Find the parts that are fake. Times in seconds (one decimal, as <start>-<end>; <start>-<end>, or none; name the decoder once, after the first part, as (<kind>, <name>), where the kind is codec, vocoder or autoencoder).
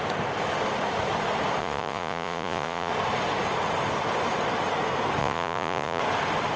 1.6-2.9 (vocoder, Vocos); 5.2-6.0